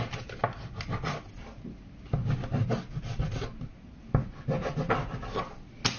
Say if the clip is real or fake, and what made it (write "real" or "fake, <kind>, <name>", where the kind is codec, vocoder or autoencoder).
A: real